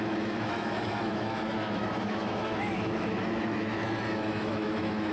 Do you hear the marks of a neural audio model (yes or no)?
yes